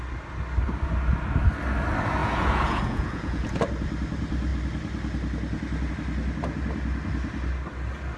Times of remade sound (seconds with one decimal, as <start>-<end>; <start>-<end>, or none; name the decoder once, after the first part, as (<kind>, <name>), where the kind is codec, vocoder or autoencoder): 2.2-3.6 (vocoder, Vocos)